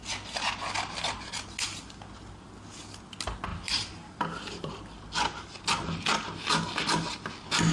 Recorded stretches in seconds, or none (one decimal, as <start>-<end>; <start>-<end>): 0.0-3.5; 4.7-7.7